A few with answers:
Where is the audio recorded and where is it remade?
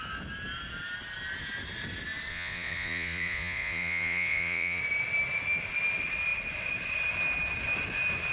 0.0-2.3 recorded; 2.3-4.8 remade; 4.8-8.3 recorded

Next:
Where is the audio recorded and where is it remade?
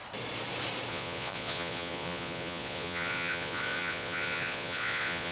0.0-0.9 recorded; 0.9-5.3 remade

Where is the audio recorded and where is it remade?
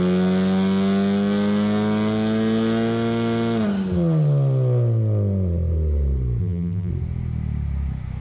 0.0-6.4 recorded; 6.4-6.9 remade; 6.9-8.2 recorded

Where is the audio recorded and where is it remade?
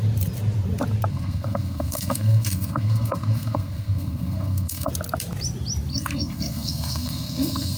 0.0-1.1 recorded; 1.1-4.9 remade; 4.9-5.9 recorded; 5.9-7.8 remade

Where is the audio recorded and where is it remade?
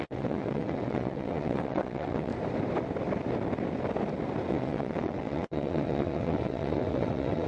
0.0-2.3 remade; 2.3-4.5 recorded; 4.5-7.5 remade